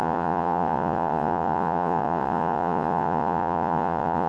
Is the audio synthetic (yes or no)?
yes